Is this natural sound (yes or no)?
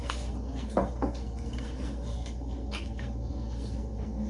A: no